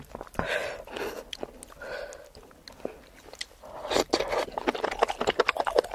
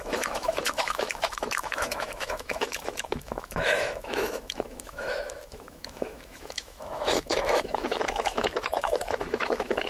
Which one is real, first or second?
first